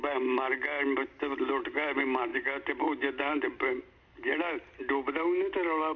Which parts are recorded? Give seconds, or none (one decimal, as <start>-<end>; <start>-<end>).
0.0-6.0